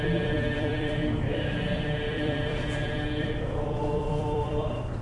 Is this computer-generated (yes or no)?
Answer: yes